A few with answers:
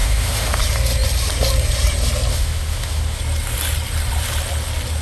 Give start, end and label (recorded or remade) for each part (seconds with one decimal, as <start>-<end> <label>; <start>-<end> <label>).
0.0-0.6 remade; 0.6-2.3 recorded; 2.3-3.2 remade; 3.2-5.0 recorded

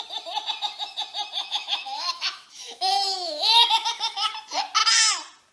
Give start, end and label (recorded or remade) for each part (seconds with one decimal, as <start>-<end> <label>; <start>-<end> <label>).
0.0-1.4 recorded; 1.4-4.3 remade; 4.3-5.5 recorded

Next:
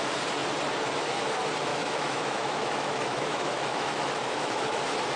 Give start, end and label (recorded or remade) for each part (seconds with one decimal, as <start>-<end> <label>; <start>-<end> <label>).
0.0-1.7 recorded; 1.7-4.8 remade; 4.8-5.2 recorded

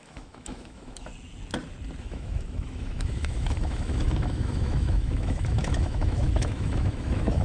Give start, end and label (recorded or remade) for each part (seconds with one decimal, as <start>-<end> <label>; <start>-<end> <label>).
0.0-1.1 remade; 1.1-2.0 recorded; 2.0-7.4 remade

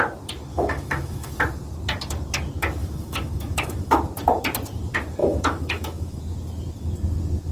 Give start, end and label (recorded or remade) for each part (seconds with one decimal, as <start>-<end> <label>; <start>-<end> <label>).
0.0-0.5 recorded; 0.5-1.3 remade; 1.3-2.8 recorded; 2.8-4.0 remade; 4.0-5.2 recorded; 5.2-6.2 remade; 6.2-7.5 recorded

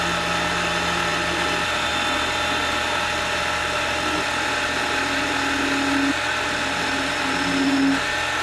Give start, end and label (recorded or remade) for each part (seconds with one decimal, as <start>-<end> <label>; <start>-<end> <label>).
0.0-8.4 recorded